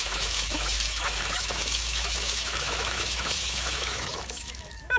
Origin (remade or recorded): remade